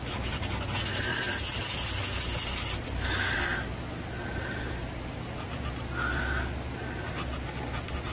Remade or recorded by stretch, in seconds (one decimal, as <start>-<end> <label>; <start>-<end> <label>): 0.0-1.1 recorded; 1.1-5.3 remade; 5.3-8.1 recorded